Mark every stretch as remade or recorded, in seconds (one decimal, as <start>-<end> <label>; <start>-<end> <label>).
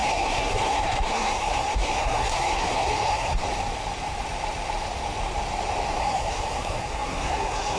0.0-3.4 remade; 3.4-6.0 recorded; 6.0-7.8 remade